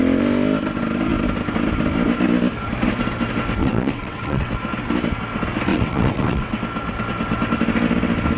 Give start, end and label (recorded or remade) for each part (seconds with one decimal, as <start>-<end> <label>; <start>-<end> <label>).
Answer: 0.0-3.6 recorded; 3.6-4.5 remade; 4.5-5.7 recorded; 5.7-6.6 remade; 6.6-8.4 recorded